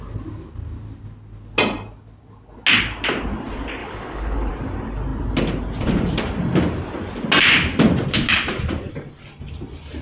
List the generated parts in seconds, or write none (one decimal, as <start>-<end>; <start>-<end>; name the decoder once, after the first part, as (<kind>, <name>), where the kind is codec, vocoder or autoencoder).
3.8-4.5 (codec, HILCodec)